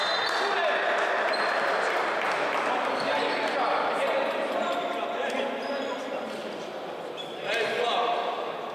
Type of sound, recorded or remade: recorded